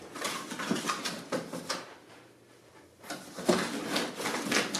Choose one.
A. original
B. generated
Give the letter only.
A